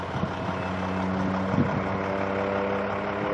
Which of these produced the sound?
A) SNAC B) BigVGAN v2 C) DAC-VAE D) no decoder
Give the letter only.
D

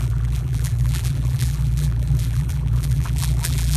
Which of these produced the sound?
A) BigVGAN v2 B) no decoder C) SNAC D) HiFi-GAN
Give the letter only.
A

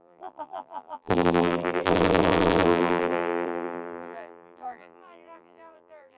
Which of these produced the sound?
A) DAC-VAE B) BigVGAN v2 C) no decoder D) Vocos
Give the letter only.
B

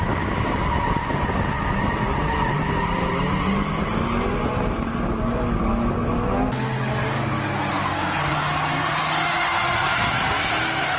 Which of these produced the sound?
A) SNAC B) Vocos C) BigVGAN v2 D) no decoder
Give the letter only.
D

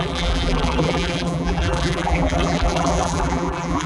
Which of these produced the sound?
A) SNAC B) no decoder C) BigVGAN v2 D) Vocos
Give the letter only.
C